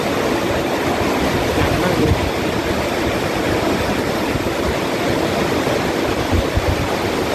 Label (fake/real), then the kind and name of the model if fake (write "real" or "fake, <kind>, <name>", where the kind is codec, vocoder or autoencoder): real